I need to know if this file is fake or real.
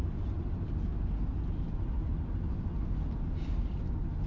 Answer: real